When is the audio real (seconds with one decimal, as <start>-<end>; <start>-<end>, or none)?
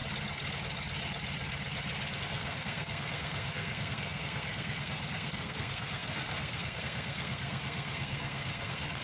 0.0-2.2